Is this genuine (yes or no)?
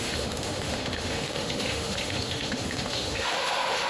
no